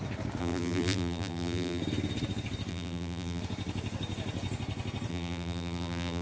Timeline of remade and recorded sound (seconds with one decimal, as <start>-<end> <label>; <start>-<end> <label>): 0.0-0.4 recorded; 0.4-1.8 remade; 1.8-2.7 recorded; 2.7-3.4 remade; 3.4-5.1 recorded; 5.1-6.2 remade